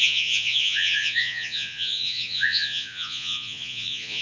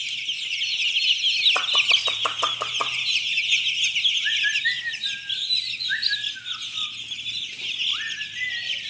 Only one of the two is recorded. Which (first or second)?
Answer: second